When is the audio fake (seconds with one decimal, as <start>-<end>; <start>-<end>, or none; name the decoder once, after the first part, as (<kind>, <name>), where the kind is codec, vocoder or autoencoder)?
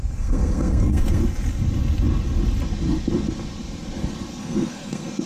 0.0-1.2 (codec, SNAC); 4.4-5.3